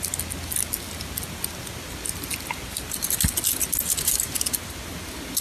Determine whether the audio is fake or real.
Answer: real